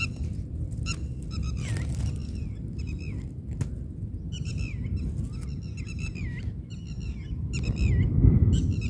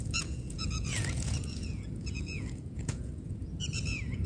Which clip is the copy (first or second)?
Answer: second